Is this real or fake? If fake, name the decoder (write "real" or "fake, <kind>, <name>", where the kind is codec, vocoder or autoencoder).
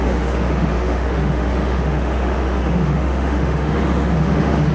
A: fake, autoencoder, DAC-VAE